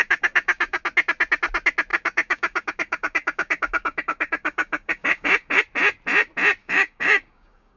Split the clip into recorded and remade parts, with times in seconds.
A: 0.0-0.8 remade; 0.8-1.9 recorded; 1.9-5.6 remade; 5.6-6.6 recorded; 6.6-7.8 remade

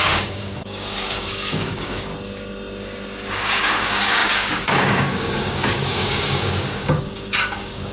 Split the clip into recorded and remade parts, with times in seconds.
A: 0.0-2.1 remade; 2.1-3.3 recorded; 3.3-7.9 remade

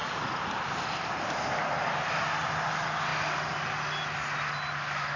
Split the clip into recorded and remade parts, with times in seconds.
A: 0.0-5.2 recorded

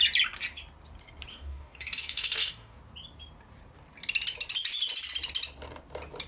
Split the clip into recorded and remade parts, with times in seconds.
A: 0.0-1.3 recorded; 1.3-2.8 remade; 2.8-6.3 recorded